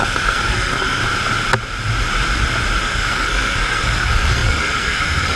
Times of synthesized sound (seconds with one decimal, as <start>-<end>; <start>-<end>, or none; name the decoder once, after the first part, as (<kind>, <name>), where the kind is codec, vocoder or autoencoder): 0.0-1.0 (codec, SNAC); 2.8-5.4